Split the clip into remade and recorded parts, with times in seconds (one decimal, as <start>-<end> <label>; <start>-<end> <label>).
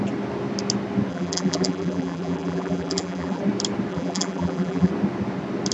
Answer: 0.0-1.1 recorded; 1.1-3.4 remade; 3.4-3.9 recorded; 3.9-4.9 remade; 4.9-5.7 recorded